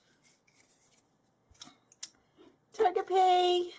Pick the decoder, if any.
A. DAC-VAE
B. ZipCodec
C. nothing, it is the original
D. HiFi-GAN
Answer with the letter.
C